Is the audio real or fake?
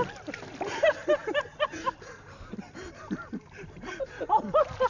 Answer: real